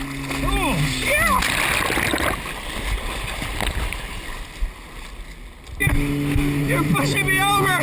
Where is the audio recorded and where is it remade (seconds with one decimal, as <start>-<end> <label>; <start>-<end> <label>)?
0.0-6.6 recorded; 6.6-7.8 remade